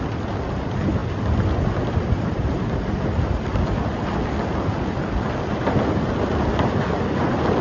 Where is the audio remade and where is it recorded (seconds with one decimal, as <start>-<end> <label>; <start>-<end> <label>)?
0.0-7.6 recorded